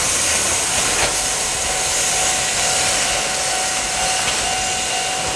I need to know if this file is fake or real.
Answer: real